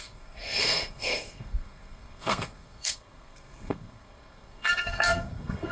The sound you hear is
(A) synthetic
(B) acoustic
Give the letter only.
A